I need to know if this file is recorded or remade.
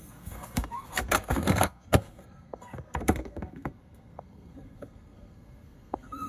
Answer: remade